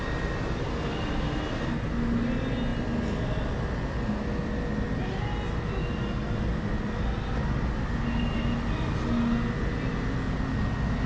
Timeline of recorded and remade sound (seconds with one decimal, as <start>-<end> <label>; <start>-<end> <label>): 0.0-11.1 recorded

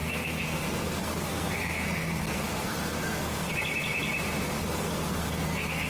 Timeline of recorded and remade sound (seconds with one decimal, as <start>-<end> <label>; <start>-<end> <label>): 0.0-3.5 remade; 3.5-4.6 recorded; 4.6-5.9 remade